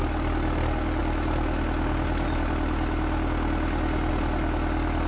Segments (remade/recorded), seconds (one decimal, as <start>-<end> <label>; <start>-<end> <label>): 0.0-1.0 remade; 1.0-4.1 recorded; 4.1-5.1 remade